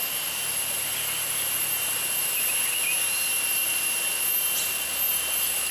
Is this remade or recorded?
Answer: remade